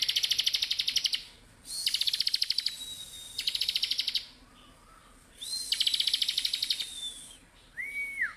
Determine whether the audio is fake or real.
real